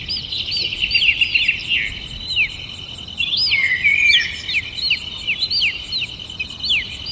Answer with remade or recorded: recorded